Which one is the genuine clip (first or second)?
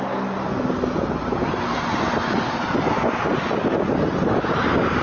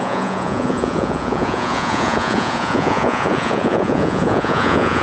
first